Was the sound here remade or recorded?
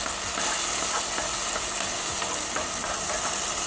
recorded